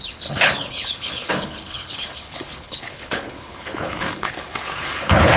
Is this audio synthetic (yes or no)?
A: yes